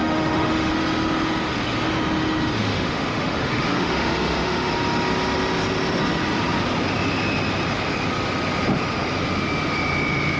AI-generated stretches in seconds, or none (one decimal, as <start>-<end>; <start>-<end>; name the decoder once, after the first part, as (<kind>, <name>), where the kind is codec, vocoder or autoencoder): 0.0-0.7 (autoencoder, DAC-VAE); 2.6-4.7